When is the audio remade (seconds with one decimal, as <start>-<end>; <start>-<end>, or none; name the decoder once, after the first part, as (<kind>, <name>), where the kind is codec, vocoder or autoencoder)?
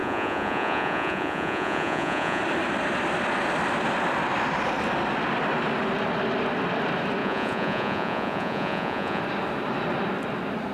0.0-2.4 (vocoder, Vocos); 7.2-9.2